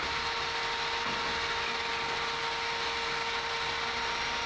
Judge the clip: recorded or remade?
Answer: recorded